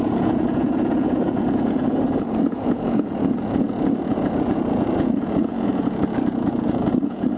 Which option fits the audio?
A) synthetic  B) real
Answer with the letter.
A